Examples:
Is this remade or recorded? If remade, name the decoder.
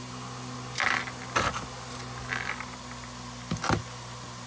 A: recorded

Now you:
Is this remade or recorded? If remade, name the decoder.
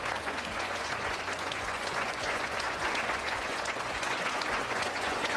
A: remade, vocoder, Vocos